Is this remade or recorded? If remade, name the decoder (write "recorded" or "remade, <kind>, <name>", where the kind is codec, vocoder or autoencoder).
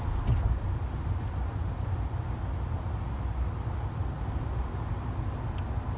recorded